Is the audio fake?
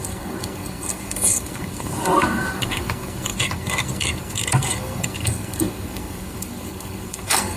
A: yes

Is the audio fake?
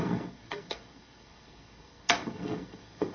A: yes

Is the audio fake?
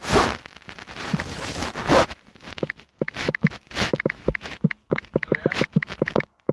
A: yes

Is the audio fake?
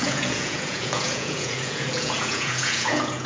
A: yes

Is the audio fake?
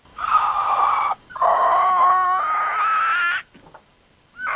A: no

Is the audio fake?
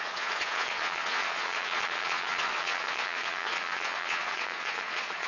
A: yes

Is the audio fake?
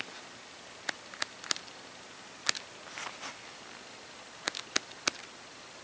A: no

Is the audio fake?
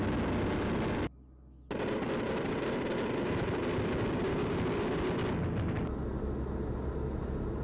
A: no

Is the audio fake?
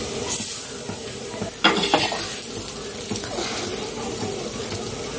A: no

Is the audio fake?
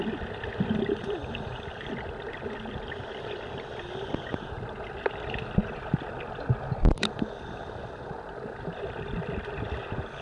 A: no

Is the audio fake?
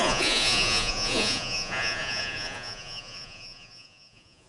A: yes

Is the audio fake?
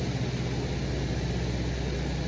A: no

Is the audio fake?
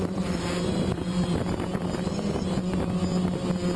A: no